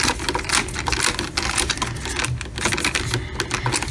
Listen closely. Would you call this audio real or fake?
real